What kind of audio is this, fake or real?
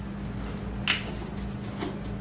real